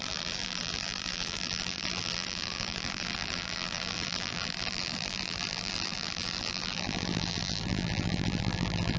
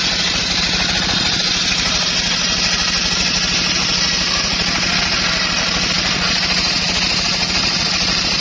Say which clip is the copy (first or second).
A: first